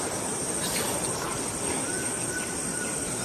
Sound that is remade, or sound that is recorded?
recorded